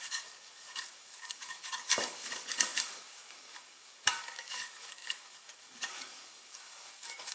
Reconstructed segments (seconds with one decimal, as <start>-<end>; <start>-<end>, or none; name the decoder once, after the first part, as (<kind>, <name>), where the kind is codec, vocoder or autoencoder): 0.0-7.3 (codec, DAC)